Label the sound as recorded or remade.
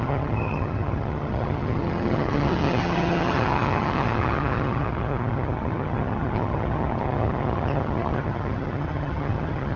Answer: remade